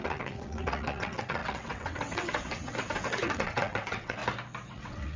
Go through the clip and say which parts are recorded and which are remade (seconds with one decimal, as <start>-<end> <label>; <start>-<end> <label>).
0.0-4.2 remade; 4.2-4.7 recorded; 4.7-5.2 remade